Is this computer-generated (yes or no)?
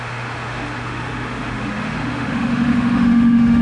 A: yes